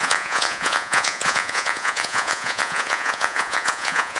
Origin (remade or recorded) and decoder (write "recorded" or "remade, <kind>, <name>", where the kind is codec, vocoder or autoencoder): remade, vocoder, Vocos